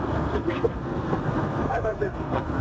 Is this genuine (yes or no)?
no